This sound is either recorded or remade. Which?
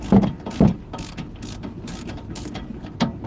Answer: recorded